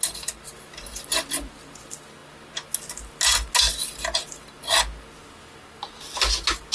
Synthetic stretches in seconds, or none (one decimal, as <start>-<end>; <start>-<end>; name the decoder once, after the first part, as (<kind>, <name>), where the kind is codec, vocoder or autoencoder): none